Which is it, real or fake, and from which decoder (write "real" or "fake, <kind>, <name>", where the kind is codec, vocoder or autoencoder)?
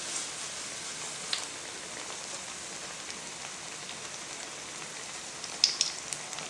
real